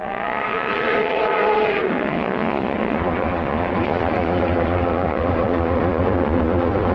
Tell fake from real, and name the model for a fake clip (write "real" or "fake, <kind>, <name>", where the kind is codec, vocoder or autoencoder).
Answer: fake, vocoder, Vocos